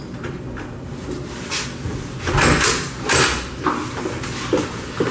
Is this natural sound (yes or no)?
yes